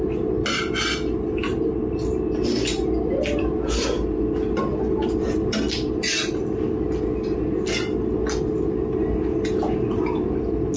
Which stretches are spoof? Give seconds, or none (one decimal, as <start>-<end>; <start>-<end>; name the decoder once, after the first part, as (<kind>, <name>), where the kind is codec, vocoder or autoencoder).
none